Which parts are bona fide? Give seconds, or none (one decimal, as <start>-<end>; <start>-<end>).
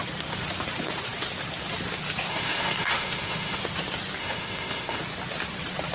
0.0-2.3; 3.6-4.2; 5.0-5.9